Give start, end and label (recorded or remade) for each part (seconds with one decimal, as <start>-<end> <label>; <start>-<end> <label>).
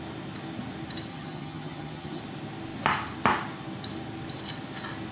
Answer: 0.0-1.1 recorded; 1.1-2.2 remade; 2.2-5.1 recorded